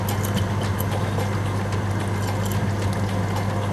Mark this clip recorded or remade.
recorded